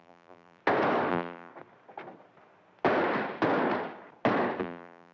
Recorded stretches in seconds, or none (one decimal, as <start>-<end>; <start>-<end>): 0.6-1.1; 1.5-4.6